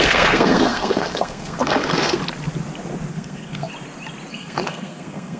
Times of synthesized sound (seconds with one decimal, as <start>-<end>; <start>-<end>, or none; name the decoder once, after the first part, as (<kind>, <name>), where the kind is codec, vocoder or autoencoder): 0.0-2.2 (codec, SNAC); 3.1-3.7; 4.3-5.4